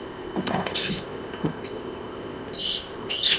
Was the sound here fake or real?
fake